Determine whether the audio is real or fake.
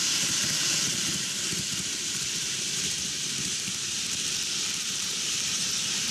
fake